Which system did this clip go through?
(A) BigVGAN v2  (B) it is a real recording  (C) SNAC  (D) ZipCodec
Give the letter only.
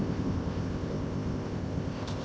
D